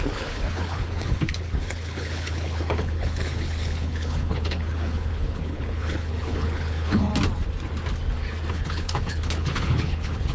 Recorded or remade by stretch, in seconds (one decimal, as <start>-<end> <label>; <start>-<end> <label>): 0.0-7.1 remade; 7.1-8.5 recorded; 8.5-10.3 remade